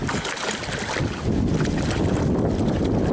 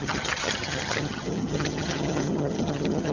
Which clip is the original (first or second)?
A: first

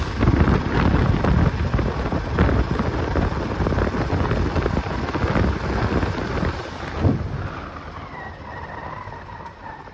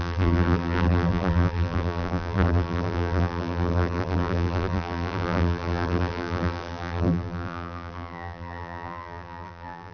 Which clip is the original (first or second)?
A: first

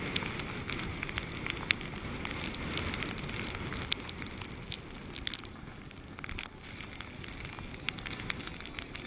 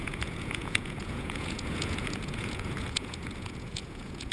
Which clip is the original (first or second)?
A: first